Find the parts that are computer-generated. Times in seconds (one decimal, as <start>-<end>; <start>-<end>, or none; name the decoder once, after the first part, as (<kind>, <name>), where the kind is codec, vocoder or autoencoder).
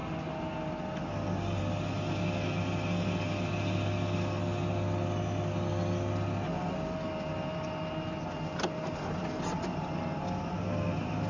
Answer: none